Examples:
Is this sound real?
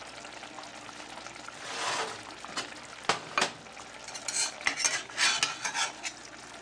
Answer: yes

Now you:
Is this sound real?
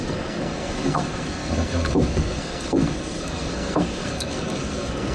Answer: no